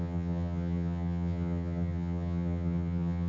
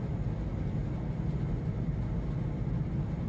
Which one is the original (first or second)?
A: second